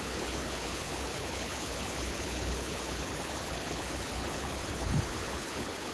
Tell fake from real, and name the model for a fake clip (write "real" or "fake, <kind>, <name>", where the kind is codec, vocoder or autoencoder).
fake, codec, HILCodec